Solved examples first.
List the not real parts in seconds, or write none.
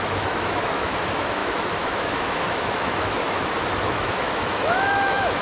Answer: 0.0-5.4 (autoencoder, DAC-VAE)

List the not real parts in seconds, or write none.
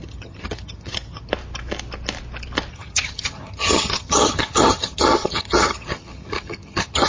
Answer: 0.0-1.3 (vocoder, HiFi-GAN); 2.7-7.1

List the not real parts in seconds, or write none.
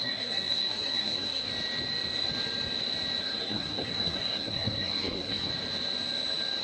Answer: 0.0-1.5 (codec, SNAC); 3.2-5.5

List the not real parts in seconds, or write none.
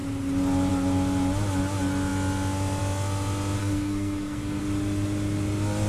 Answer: 3.6-4.6 (codec, SNAC)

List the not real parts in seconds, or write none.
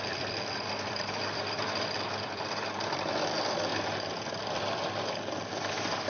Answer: 0.0-3.7 (vocoder, BigVGAN v2); 4.5-6.1